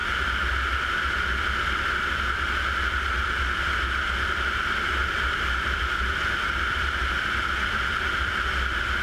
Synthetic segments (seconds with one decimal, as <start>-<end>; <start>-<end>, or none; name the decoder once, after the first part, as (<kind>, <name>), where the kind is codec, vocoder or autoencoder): 5.0-8.3 (vocoder, BigVGAN v2)

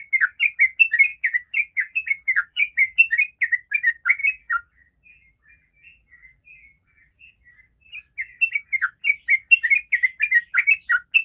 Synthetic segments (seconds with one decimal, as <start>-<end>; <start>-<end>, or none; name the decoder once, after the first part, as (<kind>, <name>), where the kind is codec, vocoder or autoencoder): 1.1-3.2 (vocoder, BigVGAN v2); 4.2-7.3

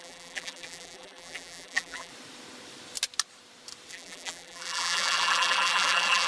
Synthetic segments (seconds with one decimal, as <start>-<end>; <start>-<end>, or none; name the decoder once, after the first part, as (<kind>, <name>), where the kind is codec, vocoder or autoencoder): 0.0-2.1 (vocoder, BigVGAN v2); 3.9-6.3

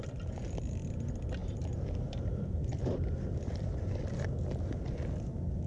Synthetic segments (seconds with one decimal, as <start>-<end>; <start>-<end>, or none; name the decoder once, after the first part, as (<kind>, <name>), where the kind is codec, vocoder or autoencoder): 1.4-4.0 (vocoder, BigVGAN v2)